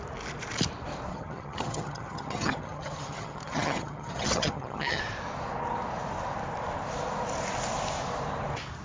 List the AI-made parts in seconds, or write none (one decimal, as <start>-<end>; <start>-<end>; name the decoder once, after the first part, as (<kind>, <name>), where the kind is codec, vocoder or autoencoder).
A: 1.1-5.0 (vocoder, HiFi-GAN)